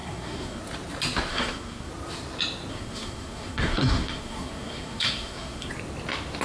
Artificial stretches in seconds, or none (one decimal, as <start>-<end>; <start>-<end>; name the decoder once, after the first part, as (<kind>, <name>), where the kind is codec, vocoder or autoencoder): 0.0-0.6 (codec, SNAC); 1.3-1.9; 2.7-5.7